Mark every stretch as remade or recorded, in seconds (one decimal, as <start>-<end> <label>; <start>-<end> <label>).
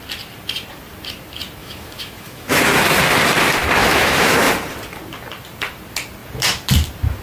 0.0-1.6 recorded; 1.6-2.6 remade; 2.6-3.8 recorded; 3.8-4.5 remade; 4.5-7.2 recorded